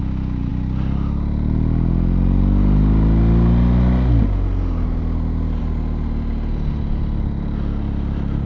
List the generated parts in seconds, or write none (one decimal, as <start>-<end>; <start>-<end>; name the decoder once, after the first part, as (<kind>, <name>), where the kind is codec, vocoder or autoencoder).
none